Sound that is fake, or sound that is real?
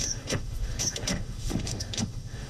fake